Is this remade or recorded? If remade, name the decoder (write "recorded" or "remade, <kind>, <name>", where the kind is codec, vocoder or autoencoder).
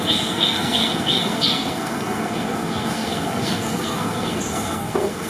remade, codec, SNAC